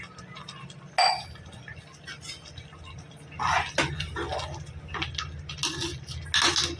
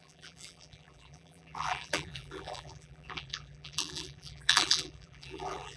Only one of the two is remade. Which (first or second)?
second